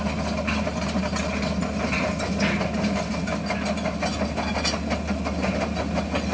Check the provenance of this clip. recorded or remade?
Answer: recorded